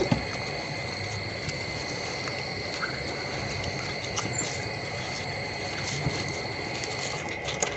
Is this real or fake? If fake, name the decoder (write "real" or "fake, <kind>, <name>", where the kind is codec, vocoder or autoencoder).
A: real